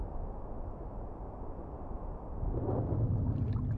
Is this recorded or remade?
recorded